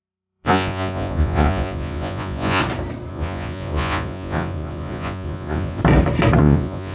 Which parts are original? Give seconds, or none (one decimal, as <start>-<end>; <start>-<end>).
2.6-3.1; 5.8-6.4